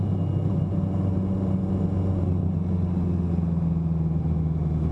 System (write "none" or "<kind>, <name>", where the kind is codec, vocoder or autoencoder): none